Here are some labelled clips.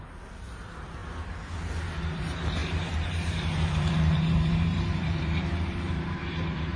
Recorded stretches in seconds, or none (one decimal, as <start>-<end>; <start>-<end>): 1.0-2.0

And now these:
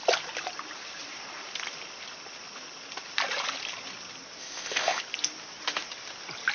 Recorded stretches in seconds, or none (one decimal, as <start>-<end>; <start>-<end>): 0.0-4.4; 5.0-6.5

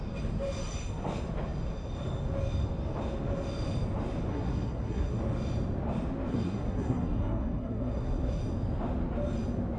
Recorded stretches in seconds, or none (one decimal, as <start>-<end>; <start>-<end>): 0.0-4.3; 5.2-6.3; 8.4-9.8